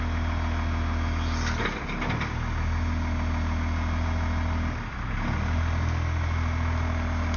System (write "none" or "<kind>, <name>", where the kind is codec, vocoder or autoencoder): none